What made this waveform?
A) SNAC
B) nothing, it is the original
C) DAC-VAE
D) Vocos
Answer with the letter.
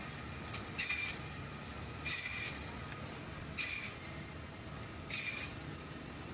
B